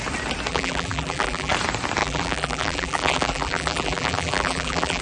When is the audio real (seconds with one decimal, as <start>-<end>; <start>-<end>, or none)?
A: 0.0-0.5; 1.5-2.0